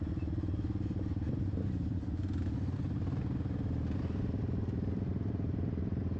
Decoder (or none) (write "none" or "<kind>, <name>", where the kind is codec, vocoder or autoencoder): none